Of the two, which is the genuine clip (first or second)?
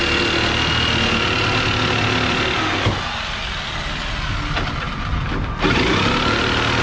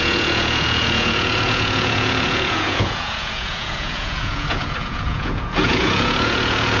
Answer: first